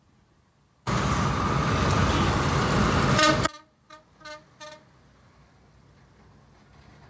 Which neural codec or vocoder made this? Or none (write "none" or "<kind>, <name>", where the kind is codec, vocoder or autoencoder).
none